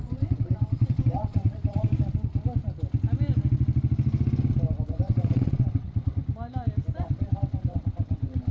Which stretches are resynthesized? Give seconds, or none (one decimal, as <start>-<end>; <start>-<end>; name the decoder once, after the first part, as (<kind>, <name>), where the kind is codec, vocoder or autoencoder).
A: 0.0-1.9 (vocoder, WaveNeXt); 4.9-6.2; 7.0-8.5